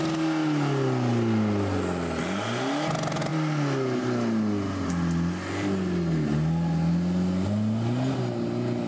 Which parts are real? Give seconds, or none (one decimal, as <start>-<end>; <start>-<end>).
0.0-8.9